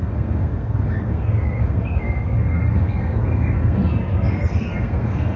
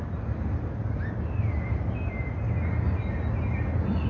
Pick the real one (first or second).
second